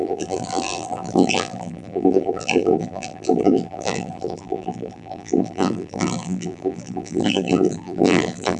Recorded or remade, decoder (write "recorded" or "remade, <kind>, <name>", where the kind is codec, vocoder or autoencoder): remade, vocoder, BigVGAN v2